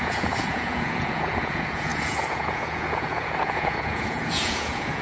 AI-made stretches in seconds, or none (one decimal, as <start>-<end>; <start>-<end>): 0.0-5.0